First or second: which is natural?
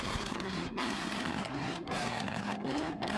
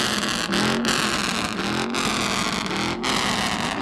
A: second